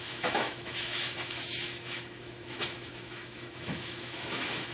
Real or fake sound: fake